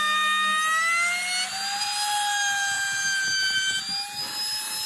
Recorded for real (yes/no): yes